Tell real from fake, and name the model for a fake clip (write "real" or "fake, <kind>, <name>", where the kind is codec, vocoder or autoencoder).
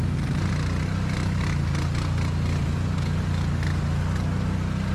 real